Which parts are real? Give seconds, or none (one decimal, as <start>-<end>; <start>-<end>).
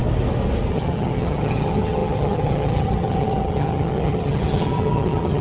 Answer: 0.0-0.7